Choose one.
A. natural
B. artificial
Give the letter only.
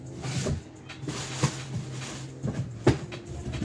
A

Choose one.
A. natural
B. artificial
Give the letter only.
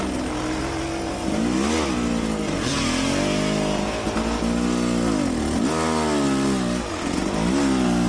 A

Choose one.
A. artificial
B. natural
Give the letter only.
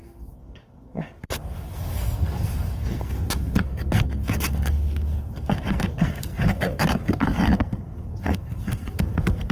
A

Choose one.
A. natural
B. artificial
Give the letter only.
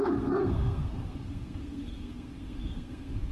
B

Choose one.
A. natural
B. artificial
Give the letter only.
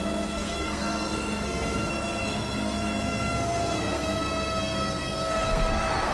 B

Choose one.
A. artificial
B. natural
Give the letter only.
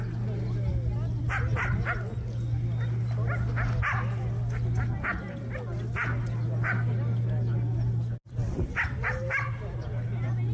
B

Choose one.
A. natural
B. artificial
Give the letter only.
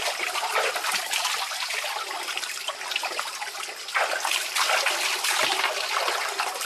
A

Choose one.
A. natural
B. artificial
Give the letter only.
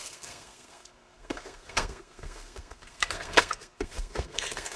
B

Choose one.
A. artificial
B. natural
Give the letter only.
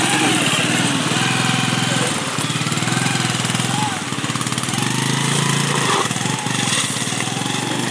B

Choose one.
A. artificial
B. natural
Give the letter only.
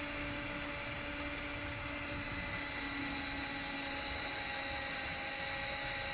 B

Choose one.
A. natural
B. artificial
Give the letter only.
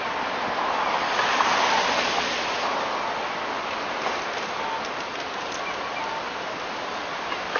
A